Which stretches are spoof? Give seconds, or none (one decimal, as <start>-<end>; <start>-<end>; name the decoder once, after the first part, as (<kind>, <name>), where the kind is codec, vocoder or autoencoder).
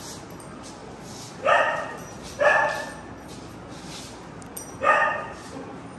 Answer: none